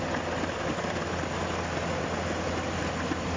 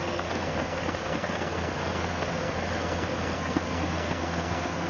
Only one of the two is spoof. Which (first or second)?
second